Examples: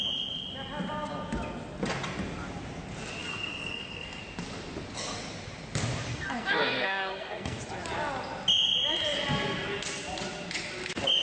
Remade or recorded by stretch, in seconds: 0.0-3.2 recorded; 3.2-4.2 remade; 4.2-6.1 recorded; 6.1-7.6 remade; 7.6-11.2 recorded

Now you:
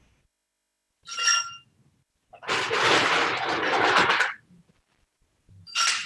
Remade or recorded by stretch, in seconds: 0.0-6.1 recorded